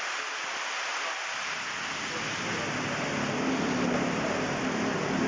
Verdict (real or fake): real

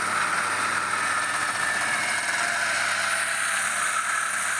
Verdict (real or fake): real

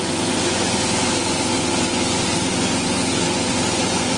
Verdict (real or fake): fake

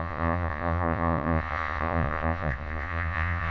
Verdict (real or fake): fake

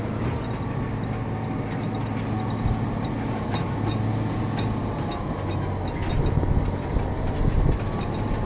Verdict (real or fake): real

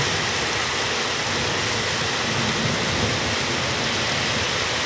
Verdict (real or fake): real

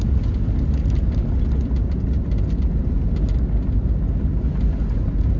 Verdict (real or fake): real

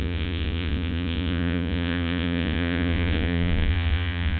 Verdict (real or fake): fake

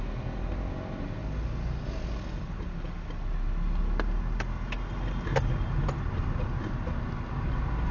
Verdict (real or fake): real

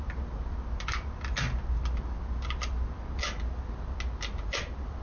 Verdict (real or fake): real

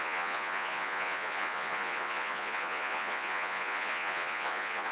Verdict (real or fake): fake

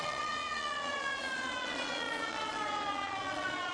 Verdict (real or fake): fake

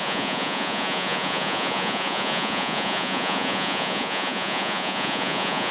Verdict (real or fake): fake